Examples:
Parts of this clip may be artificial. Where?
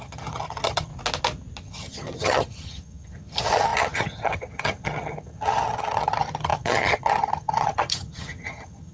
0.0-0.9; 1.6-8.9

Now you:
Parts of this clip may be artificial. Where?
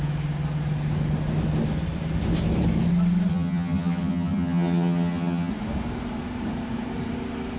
3.3-5.5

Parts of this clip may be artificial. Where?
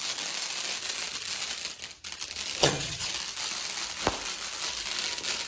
2.6-3.1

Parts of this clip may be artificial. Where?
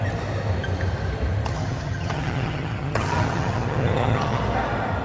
1.5-4.4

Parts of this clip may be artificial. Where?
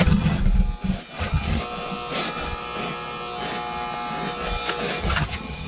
0.0-0.4; 1.2-1.6; 5.0-5.7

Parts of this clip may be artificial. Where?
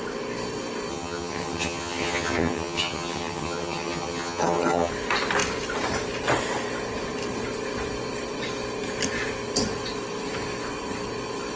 0.9-4.9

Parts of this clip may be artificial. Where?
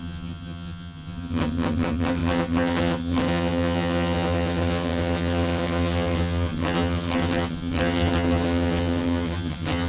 0.0-9.9